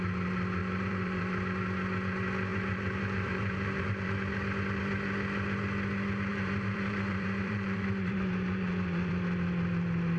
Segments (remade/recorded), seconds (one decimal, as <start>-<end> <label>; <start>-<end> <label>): 0.0-0.6 recorded; 0.6-1.4 remade; 1.4-2.5 recorded; 2.5-4.1 remade; 4.1-6.3 recorded; 6.3-9.1 remade; 9.1-10.2 recorded